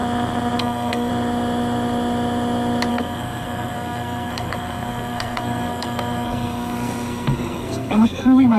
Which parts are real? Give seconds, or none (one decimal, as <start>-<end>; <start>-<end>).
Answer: 0.0-0.6; 1.1-2.9